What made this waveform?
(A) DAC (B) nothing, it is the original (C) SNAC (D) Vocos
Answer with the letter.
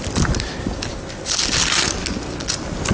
B